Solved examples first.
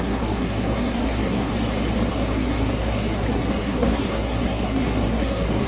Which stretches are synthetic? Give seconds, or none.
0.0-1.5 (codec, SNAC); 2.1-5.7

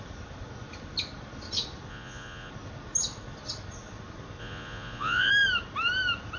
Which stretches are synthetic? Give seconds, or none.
1.9-2.5 (vocoder, Vocos); 4.4-5.3

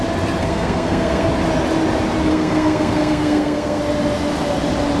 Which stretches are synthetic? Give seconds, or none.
0.4-1.3 (codec, SNAC); 2.3-3.8

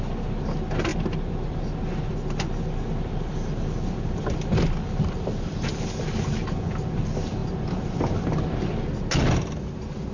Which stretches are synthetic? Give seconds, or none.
none

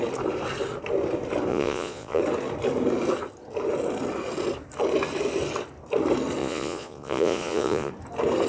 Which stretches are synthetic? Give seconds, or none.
1.5-2.2 (vocoder, Vocos); 6.4-7.9

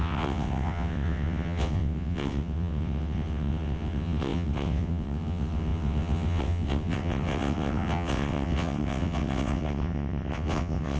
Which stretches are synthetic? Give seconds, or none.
0.0-11.0 (vocoder, WaveNeXt)

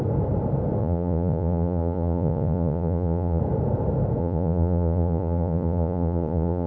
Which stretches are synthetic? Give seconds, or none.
0.8-3.4 (vocoder, Vocos); 4.2-6.7

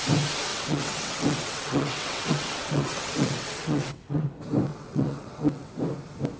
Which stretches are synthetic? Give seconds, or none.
0.5-4.3 (vocoder, WaveNeXt); 4.7-5.7